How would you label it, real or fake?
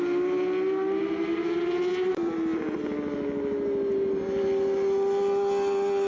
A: real